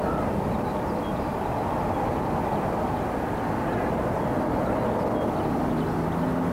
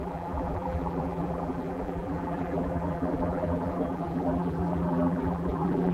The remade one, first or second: second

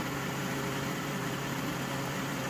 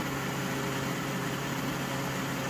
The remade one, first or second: first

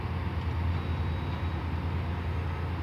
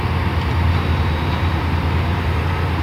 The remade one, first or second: second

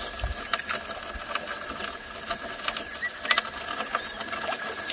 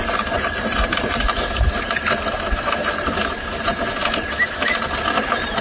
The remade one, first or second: second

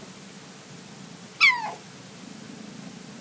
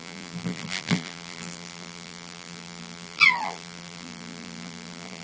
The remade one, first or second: second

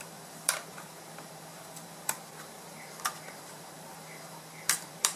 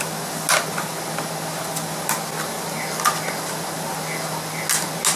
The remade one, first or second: first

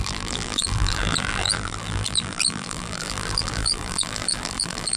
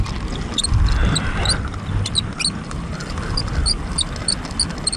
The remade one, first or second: first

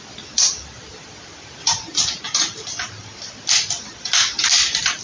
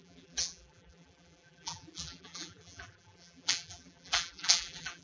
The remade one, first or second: second